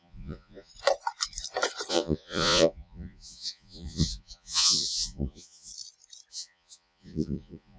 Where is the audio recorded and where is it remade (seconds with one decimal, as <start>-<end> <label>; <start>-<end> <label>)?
0.0-0.7 remade; 0.7-1.9 recorded; 1.9-5.7 remade; 5.7-6.3 recorded; 6.3-7.8 remade